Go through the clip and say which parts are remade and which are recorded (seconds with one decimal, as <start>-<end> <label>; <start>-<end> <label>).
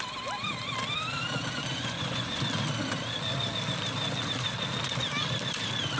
0.0-1.7 recorded; 1.7-2.4 remade; 2.4-6.0 recorded